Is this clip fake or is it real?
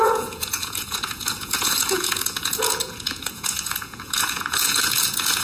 fake